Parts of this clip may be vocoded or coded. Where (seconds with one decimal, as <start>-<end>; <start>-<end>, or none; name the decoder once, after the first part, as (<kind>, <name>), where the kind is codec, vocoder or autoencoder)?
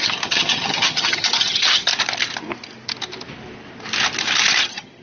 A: 0.0-1.9 (vocoder, HiFi-GAN); 4.6-5.0